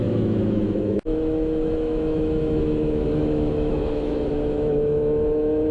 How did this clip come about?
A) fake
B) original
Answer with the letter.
A